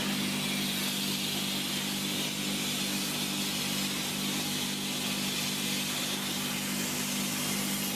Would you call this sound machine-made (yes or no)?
no